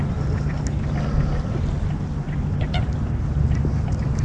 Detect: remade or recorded recorded